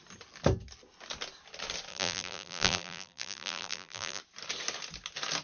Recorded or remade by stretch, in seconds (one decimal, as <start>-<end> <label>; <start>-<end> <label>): 0.0-1.9 recorded; 1.9-4.2 remade; 4.2-5.4 recorded